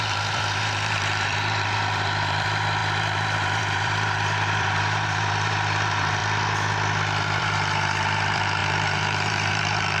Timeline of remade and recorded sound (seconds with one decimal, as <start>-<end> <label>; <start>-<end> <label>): 0.0-6.2 remade; 6.2-7.4 recorded; 7.4-10.0 remade